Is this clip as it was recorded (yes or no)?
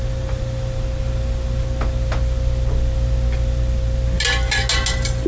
yes